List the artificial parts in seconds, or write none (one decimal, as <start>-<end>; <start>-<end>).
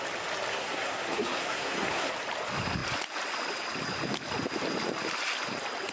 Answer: 0.5-2.1